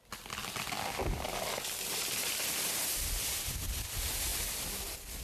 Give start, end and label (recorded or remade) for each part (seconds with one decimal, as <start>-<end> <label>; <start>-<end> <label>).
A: 0.0-0.4 recorded; 0.4-3.5 remade; 3.5-4.3 recorded; 4.3-5.2 remade

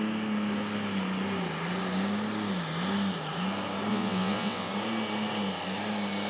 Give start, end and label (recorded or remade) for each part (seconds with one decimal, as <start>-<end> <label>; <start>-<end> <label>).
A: 0.0-3.9 recorded; 3.9-4.7 remade; 4.7-6.3 recorded